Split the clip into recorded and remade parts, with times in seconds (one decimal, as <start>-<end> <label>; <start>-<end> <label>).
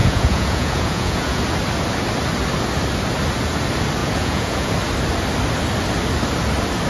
0.0-1.4 remade; 1.4-4.0 recorded; 4.0-4.7 remade; 4.7-6.9 recorded